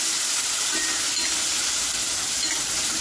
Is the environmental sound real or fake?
real